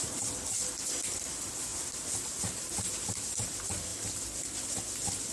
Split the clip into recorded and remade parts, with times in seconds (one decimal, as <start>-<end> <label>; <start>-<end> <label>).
0.0-5.3 recorded